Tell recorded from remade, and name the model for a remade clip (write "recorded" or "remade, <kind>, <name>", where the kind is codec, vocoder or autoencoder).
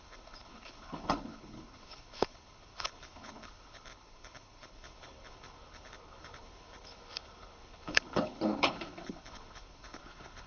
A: remade, codec, HILCodec